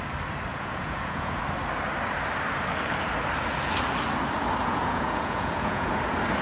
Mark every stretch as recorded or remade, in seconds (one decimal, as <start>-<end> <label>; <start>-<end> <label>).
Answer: 0.0-0.5 recorded; 0.5-1.4 remade; 1.4-4.6 recorded; 4.6-5.9 remade; 5.9-6.4 recorded